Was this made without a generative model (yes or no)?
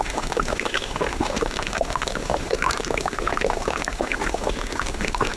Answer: no